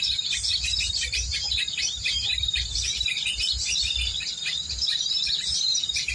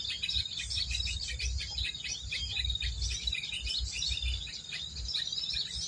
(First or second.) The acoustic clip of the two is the second